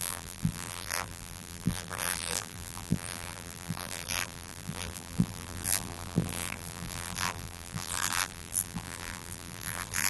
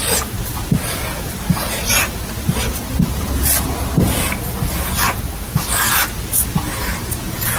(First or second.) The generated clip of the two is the first